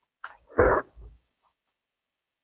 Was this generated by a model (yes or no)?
yes